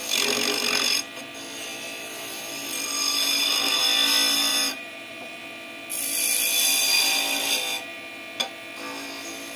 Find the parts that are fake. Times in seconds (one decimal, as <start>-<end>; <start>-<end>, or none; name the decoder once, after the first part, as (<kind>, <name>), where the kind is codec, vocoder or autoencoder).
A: 4.5-5.4 (vocoder, BigVGAN v2)